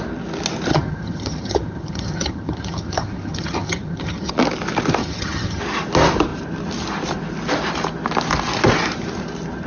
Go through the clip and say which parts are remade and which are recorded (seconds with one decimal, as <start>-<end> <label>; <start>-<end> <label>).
0.0-0.7 recorded; 0.7-4.3 remade; 4.3-5.0 recorded; 5.0-5.6 remade; 5.6-9.7 recorded